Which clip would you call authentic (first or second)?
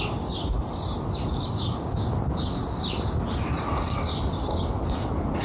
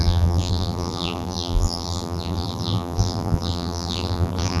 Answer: first